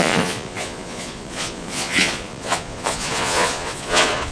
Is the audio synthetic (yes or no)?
yes